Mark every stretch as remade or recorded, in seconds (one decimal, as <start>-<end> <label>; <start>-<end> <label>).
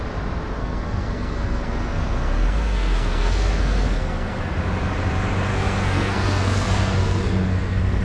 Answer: 0.0-0.6 recorded; 0.6-4.5 remade; 4.5-5.5 recorded; 5.5-8.0 remade